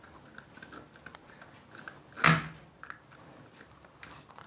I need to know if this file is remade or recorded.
recorded